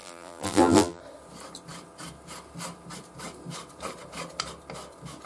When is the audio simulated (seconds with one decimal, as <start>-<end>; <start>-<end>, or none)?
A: 0.0-1.0